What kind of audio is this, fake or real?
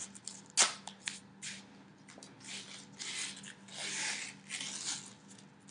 real